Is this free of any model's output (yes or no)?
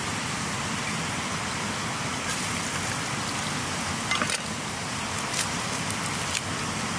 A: yes